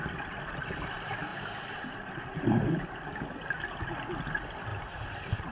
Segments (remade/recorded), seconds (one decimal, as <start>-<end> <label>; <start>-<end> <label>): 0.0-1.3 recorded; 1.3-2.1 remade; 2.1-4.7 recorded; 4.7-5.5 remade